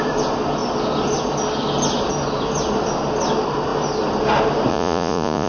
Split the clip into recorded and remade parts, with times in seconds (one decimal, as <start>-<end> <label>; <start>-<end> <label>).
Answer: 0.0-4.7 recorded; 4.7-5.5 remade